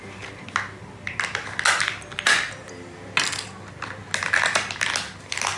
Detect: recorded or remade recorded